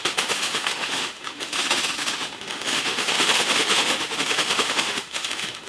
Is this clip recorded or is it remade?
remade